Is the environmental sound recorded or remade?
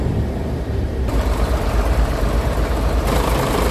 remade